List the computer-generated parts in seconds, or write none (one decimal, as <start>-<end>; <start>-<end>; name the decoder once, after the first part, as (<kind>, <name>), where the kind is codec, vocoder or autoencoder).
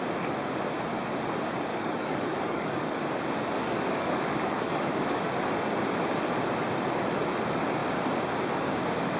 1.7-3.0 (codec, DAC); 3.6-5.3